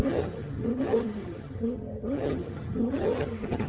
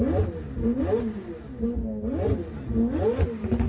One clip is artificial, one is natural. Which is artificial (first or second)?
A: first